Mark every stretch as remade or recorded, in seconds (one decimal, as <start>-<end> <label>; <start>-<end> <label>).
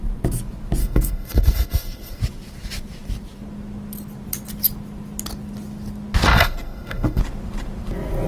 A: 0.0-0.8 recorded; 0.8-2.2 remade; 2.2-6.3 recorded; 6.3-7.2 remade; 7.2-8.3 recorded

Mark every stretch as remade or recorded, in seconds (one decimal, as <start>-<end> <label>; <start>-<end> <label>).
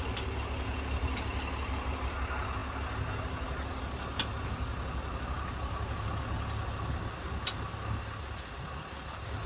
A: 0.0-9.5 recorded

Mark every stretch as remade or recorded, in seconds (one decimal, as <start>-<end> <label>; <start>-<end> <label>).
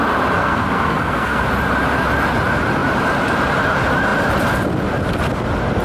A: 0.0-0.4 recorded; 0.4-1.4 remade; 1.4-5.8 recorded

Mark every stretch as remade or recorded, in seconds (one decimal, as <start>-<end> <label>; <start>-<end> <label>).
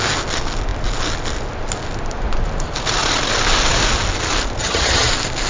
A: 0.0-4.6 recorded; 4.6-5.1 remade; 5.1-5.5 recorded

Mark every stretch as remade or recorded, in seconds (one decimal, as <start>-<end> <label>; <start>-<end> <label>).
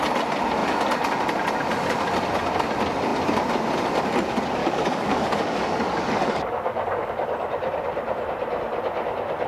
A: 0.0-4.6 recorded; 4.6-7.1 remade; 7.1-9.5 recorded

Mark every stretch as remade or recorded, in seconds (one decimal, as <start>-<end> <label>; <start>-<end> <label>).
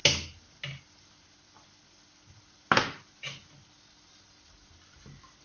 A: 0.0-5.4 recorded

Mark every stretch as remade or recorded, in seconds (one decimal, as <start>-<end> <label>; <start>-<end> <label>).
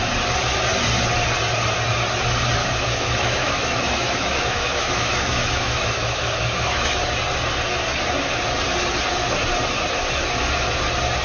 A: 0.0-2.6 recorded; 2.6-7.1 remade; 7.1-11.2 recorded